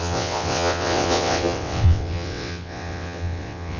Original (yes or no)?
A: no